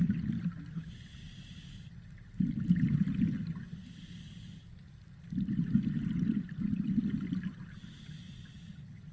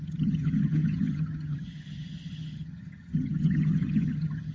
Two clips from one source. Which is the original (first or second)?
first